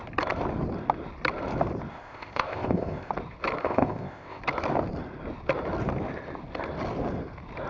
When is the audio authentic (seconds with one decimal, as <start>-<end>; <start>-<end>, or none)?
0.0-1.9; 3.1-3.6; 4.4-7.7